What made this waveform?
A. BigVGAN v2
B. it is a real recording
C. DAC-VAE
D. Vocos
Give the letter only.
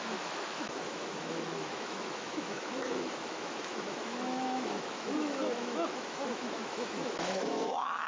C